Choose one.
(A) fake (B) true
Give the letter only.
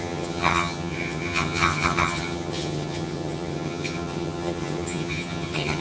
A